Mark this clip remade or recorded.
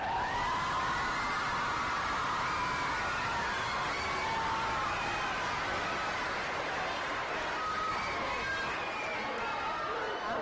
recorded